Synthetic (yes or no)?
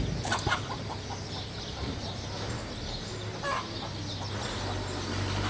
no